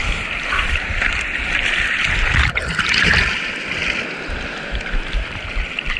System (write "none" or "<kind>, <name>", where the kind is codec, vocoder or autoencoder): vocoder, BigVGAN v2